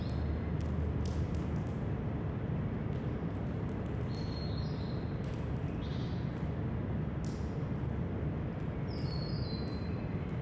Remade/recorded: recorded